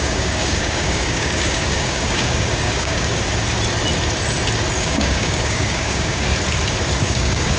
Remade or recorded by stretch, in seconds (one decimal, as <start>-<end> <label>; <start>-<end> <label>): 0.0-3.2 remade; 3.2-4.8 recorded; 4.8-6.3 remade; 6.3-7.0 recorded; 7.0-7.6 remade